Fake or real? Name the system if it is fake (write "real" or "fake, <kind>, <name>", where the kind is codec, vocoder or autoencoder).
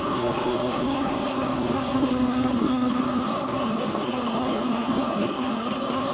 fake, codec, SNAC